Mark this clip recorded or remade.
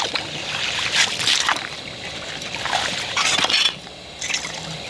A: recorded